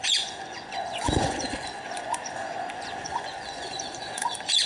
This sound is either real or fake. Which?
fake